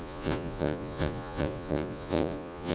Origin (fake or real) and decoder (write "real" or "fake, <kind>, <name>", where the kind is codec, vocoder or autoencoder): fake, vocoder, Vocos